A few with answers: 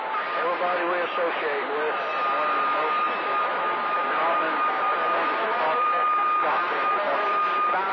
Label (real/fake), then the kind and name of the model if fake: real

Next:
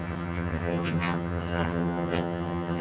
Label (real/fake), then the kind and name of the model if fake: fake, vocoder, HiFi-GAN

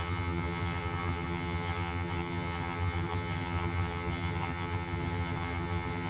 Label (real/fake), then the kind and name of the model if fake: fake, vocoder, HiFi-GAN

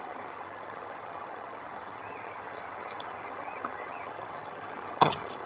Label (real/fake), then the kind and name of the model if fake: fake, vocoder, HiFi-GAN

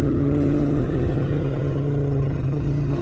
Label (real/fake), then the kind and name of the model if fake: fake, vocoder, HiFi-GAN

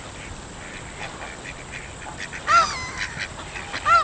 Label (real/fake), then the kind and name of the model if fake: real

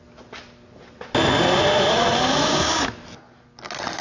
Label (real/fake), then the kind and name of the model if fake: real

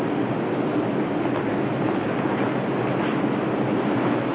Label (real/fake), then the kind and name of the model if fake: real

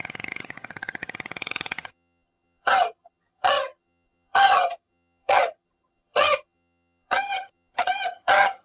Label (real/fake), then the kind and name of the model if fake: fake, vocoder, HiFi-GAN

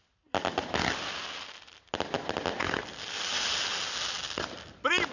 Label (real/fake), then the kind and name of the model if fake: real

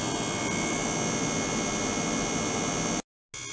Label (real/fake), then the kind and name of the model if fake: real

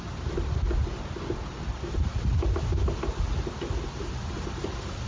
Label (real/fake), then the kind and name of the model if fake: real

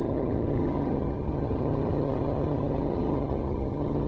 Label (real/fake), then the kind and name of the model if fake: fake, vocoder, HiFi-GAN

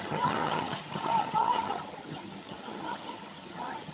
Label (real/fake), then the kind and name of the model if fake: fake, vocoder, HiFi-GAN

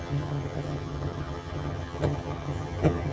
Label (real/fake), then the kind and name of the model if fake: fake, vocoder, HiFi-GAN